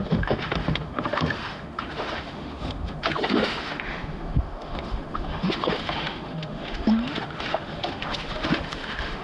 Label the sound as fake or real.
fake